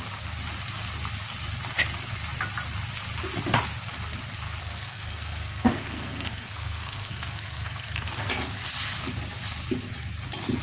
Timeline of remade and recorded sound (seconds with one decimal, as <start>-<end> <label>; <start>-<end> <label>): 0.0-4.6 recorded; 4.6-8.3 remade; 8.3-10.6 recorded